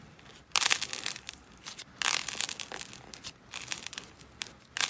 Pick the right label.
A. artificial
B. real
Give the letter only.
B